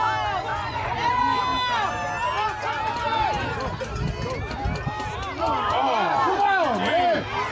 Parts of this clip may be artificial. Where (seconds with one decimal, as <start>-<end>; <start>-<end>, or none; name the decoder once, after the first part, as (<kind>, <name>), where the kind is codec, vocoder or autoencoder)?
0.5-1.1 (vocoder, Vocos)